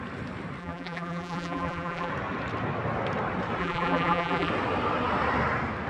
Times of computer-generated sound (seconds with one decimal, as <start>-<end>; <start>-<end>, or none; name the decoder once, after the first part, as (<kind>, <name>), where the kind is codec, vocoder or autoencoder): 0.6-2.1 (vocoder, BigVGAN v2); 3.6-4.5